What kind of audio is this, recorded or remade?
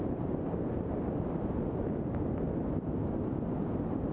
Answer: recorded